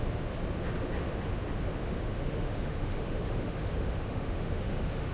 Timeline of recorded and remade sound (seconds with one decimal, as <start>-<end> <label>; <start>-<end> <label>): 0.0-1.8 recorded; 1.8-5.1 remade